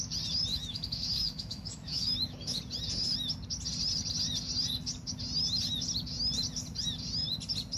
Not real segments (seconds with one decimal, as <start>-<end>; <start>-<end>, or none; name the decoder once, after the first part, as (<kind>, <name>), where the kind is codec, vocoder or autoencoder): 0.5-2.6 (autoencoder, DAC-VAE)